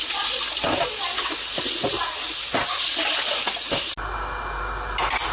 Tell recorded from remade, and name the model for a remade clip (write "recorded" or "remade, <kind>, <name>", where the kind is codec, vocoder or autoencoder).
recorded